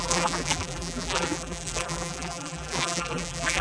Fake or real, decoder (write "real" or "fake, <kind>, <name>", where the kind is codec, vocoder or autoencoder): fake, vocoder, BigVGAN v2